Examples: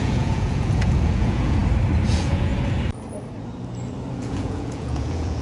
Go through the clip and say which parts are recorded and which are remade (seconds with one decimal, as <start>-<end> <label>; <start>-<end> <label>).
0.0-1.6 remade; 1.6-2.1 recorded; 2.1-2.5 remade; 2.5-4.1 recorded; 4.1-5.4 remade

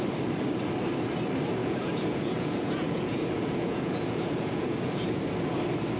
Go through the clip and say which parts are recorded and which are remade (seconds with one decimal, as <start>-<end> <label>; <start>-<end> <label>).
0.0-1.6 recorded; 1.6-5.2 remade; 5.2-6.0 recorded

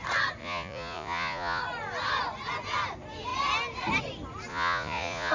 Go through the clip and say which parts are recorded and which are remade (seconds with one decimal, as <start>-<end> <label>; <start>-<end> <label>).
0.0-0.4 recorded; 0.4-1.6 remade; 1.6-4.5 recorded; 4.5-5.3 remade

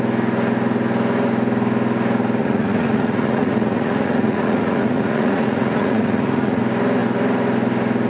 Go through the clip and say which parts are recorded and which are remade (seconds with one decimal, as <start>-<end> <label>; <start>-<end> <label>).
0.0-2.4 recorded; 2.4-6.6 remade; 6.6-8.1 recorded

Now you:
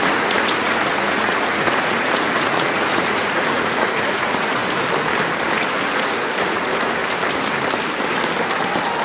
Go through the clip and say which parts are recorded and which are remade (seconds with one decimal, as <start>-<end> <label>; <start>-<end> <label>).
0.0-4.6 remade; 4.6-5.8 recorded; 5.8-7.0 remade; 7.0-9.0 recorded